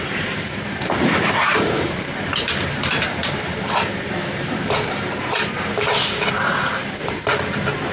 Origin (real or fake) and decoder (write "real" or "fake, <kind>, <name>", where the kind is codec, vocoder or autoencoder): fake, vocoder, BigVGAN v2